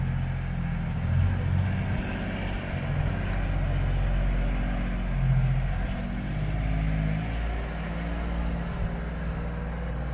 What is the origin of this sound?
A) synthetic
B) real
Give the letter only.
B